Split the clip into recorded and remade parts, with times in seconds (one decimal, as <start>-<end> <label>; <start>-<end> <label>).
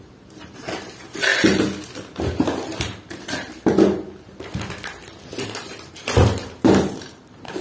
0.0-1.3 remade; 1.3-5.9 recorded; 5.9-7.6 remade